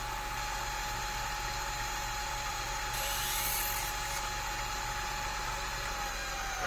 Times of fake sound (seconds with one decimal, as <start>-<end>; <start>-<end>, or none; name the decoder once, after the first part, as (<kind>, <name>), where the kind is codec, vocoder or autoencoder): 2.2-2.8 (vocoder, BigVGAN v2)